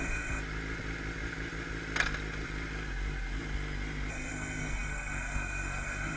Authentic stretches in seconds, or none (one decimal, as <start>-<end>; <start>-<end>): 0.4-4.1